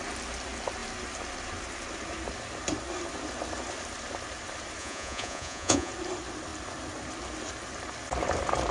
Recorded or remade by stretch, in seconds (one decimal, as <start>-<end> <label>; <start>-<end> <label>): 0.0-4.8 recorded; 4.8-5.9 remade; 5.9-8.7 recorded